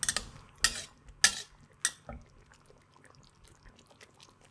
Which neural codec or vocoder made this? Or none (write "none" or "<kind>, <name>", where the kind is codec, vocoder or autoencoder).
none